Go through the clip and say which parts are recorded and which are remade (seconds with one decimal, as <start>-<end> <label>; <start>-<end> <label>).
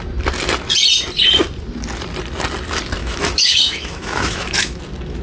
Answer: 0.0-3.0 recorded; 3.0-4.8 remade; 4.8-5.2 recorded